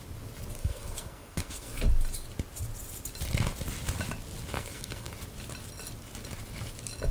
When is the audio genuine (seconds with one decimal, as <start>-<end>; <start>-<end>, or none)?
0.0-0.6; 1.8-4.5; 5.1-7.1